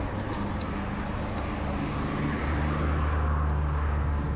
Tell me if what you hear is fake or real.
real